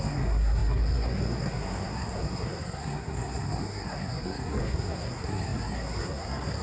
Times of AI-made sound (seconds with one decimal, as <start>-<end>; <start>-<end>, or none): 0.0-6.6